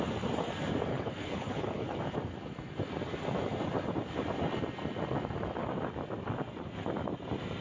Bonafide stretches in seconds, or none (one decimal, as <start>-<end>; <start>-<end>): 0.0-0.9; 2.0-7.6